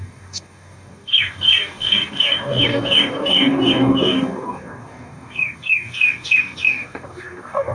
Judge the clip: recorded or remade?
remade